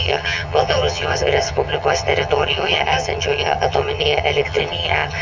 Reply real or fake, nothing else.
fake